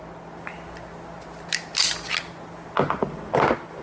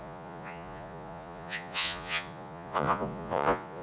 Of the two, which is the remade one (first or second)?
second